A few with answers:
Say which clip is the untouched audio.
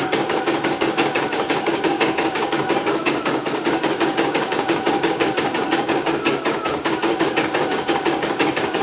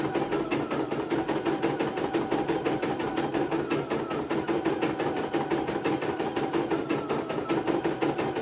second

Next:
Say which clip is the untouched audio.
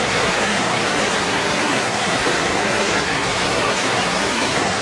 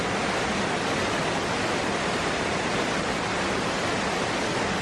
second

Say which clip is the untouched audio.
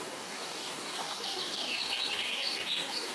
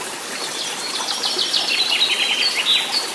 second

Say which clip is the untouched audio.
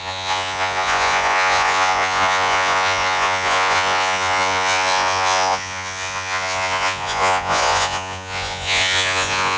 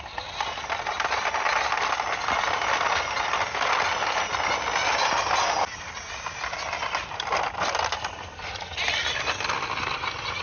second